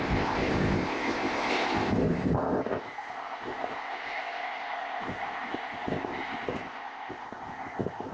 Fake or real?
fake